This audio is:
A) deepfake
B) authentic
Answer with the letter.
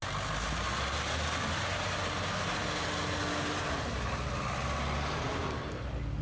B